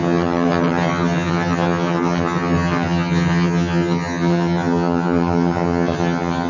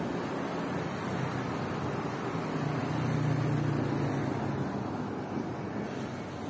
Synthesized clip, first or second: first